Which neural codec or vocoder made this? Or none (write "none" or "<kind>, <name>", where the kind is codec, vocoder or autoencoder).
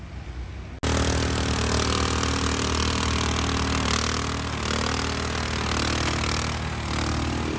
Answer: none